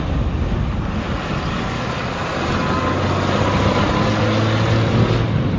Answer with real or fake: real